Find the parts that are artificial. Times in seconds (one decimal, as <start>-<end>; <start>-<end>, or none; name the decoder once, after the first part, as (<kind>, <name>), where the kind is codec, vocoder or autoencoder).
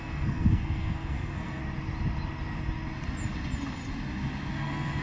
0.0-1.6 (codec, SNAC); 4.5-5.0